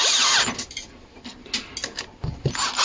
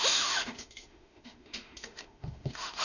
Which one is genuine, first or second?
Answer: first